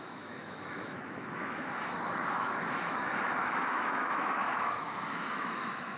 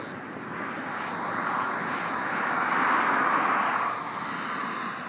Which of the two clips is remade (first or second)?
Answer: first